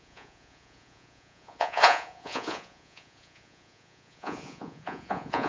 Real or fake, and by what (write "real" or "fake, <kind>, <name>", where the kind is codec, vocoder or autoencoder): fake, vocoder, Vocos